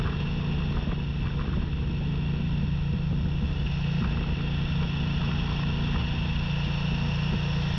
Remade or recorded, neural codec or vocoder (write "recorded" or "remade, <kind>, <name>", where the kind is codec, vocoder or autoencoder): recorded